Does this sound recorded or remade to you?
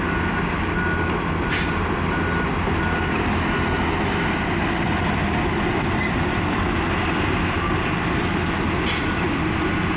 recorded